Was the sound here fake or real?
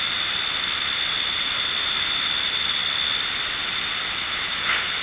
real